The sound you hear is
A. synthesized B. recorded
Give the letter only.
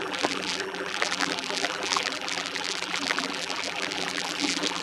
A